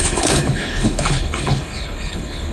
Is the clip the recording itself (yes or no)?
no